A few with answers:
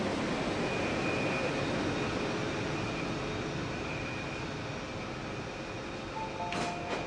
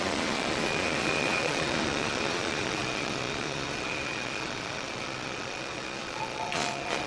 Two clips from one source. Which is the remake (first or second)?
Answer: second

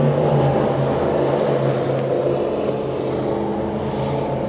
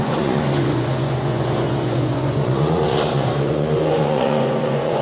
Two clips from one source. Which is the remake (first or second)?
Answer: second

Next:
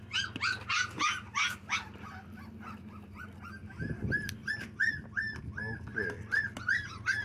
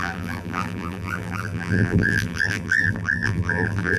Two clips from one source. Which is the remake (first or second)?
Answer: second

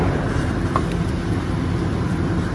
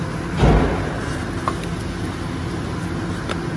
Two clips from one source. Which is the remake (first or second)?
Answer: first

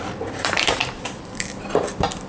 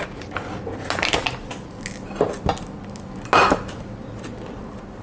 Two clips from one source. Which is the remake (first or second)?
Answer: first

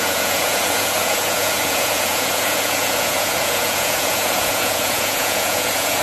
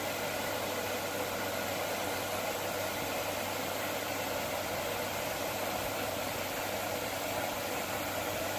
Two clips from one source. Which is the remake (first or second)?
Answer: first